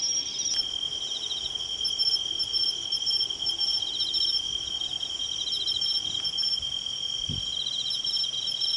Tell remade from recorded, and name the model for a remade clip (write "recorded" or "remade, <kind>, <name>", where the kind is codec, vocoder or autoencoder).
recorded